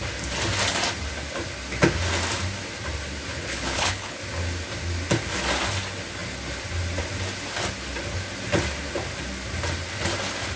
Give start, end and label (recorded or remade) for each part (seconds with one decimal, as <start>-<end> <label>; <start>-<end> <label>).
0.0-3.3 recorded; 3.3-4.2 remade; 4.2-10.6 recorded